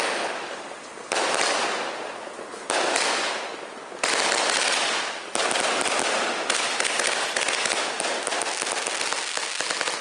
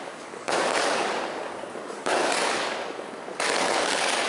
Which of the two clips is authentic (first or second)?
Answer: first